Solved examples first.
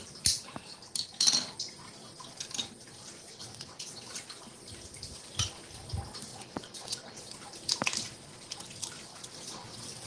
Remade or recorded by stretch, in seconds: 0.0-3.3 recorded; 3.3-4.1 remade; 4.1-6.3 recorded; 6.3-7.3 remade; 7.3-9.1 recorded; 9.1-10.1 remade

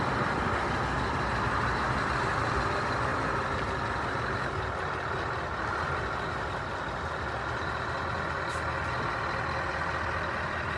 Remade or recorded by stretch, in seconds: 0.0-10.8 recorded

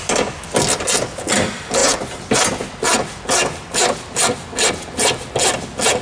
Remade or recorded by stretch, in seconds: 0.0-6.0 recorded

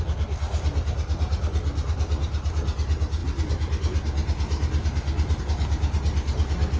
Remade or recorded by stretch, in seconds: 0.0-6.8 recorded